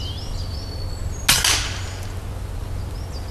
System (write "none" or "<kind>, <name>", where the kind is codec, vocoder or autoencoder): none